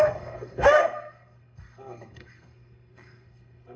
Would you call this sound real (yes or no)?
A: no